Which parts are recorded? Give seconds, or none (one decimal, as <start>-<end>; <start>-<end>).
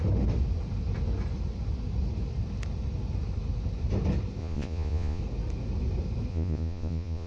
0.0-4.4; 5.2-6.3